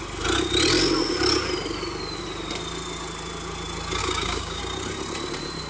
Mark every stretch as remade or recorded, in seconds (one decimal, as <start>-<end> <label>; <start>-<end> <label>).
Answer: 0.0-4.0 recorded; 4.0-4.6 remade; 4.6-5.7 recorded